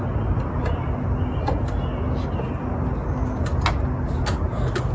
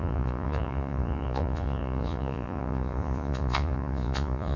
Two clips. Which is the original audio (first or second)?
first